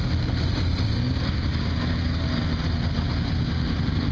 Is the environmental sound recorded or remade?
recorded